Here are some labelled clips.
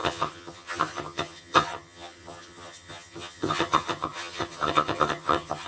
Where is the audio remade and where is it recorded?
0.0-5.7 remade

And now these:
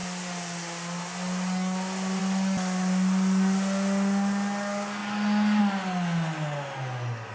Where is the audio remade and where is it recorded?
0.0-7.3 recorded

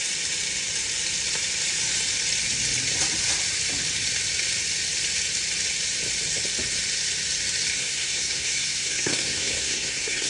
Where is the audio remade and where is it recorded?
0.0-7.8 recorded; 7.8-10.3 remade

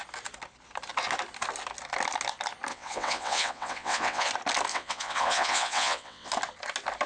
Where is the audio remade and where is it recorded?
0.0-2.7 recorded; 2.7-4.3 remade; 4.3-4.7 recorded; 4.7-6.3 remade; 6.3-7.1 recorded

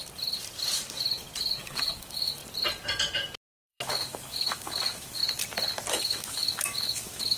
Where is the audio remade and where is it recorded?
0.0-1.6 recorded; 1.6-2.4 remade; 2.4-3.6 recorded; 3.6-5.2 remade; 5.2-5.9 recorded; 5.9-7.4 remade

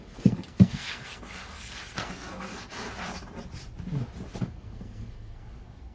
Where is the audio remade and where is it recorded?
0.0-2.5 remade; 2.5-4.4 recorded; 4.4-5.9 remade

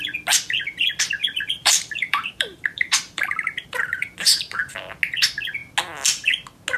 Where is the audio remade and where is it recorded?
0.0-1.2 recorded; 1.2-4.8 remade; 4.8-6.8 recorded

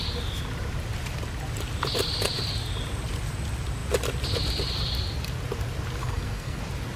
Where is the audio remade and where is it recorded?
0.0-6.0 recorded; 6.0-6.6 remade; 6.6-7.0 recorded